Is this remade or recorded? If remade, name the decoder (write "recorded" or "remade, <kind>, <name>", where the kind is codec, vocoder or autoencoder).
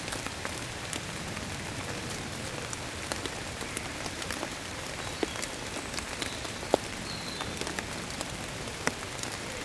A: recorded